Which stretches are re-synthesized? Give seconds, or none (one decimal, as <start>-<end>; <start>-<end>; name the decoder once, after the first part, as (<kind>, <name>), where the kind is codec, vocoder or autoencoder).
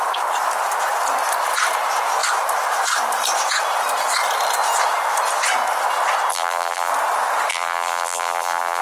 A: 6.3-6.9 (vocoder, BigVGAN v2); 7.5-8.8